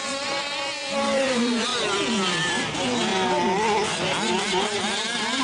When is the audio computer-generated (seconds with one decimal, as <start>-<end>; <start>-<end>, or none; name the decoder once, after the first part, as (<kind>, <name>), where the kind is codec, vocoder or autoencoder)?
0.0-3.1 (vocoder, BigVGAN v2); 3.9-5.4